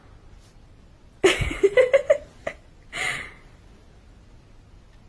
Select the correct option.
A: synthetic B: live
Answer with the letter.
B